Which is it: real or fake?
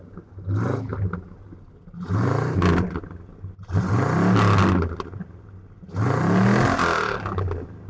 real